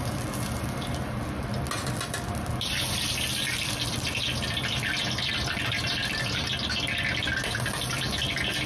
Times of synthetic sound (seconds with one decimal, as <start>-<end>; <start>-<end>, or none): none